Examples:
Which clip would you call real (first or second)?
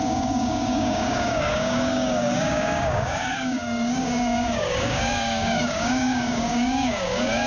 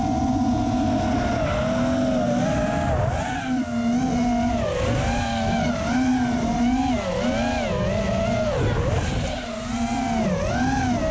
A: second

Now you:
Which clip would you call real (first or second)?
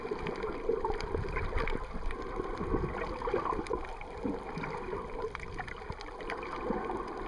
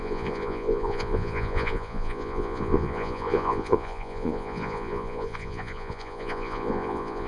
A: first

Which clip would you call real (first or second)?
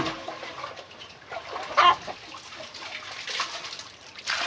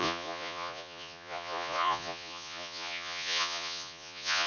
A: first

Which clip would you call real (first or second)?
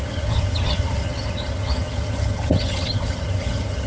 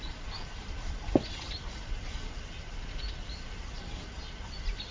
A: second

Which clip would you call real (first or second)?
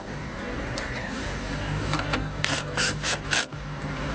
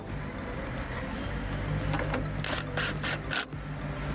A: second